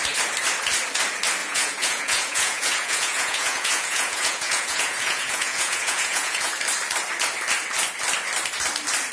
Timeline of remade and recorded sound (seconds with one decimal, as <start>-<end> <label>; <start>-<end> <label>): 0.0-1.4 recorded; 1.4-6.5 remade; 6.5-9.1 recorded